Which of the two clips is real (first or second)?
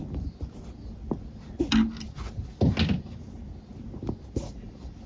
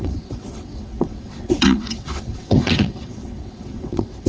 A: first